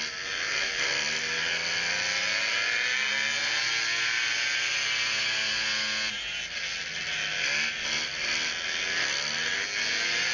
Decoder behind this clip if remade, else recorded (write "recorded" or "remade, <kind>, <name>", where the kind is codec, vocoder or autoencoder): recorded